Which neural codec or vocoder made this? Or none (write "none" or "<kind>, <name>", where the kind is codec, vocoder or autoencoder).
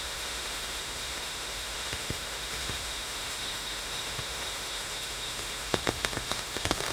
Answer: autoencoder, DAC-VAE